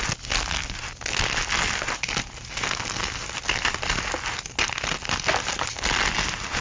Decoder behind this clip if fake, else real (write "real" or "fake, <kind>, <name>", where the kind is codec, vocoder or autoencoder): real